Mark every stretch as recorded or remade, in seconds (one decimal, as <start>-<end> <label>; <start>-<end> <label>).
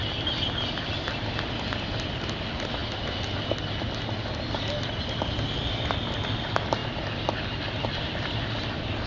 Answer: 0.0-9.1 recorded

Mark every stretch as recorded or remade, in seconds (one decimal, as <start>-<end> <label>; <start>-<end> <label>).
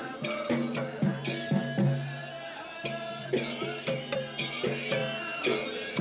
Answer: 0.0-6.0 recorded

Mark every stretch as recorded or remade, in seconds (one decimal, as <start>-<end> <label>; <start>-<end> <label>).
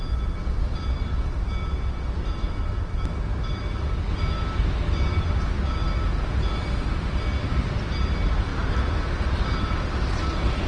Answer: 0.0-10.7 recorded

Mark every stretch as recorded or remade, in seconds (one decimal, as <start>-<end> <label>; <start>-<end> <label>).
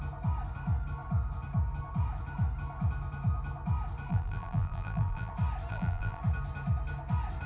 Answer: 0.0-4.1 recorded; 4.1-5.3 remade; 5.3-5.7 recorded; 5.7-6.2 remade; 6.2-7.5 recorded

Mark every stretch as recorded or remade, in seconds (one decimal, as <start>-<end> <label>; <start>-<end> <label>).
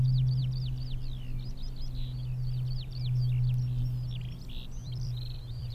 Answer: 0.0-4.8 recorded; 4.8-5.7 remade